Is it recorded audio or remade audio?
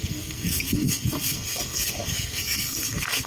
remade